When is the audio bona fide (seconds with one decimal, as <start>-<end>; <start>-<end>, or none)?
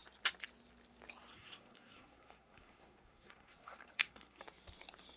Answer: 0.0-1.3; 4.4-5.2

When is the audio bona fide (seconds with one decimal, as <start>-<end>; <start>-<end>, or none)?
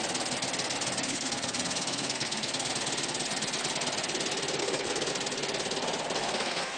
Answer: 0.0-1.1; 2.7-4.6; 5.1-6.2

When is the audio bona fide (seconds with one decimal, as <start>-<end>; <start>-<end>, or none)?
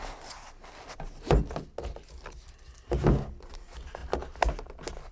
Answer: 0.0-5.1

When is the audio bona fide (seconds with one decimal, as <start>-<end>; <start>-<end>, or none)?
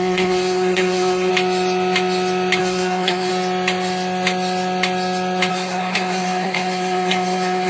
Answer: 1.3-2.6; 3.3-5.5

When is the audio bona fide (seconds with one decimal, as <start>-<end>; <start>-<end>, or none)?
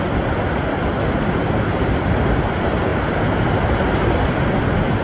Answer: 0.0-5.0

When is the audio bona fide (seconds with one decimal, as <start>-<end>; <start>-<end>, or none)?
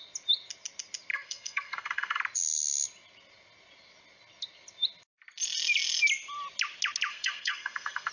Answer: 0.0-1.1; 2.2-7.1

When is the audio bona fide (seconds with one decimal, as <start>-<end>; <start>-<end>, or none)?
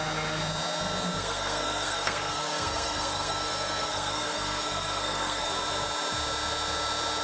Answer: 0.0-1.2; 5.5-7.2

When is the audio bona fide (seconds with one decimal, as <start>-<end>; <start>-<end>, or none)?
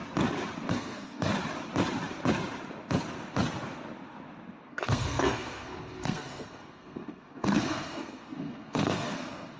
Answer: 0.0-0.7; 1.3-4.7